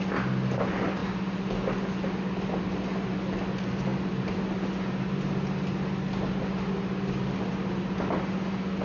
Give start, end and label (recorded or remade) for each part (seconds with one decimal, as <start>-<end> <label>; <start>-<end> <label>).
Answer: 0.0-8.8 recorded